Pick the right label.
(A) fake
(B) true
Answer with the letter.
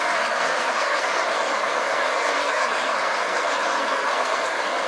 A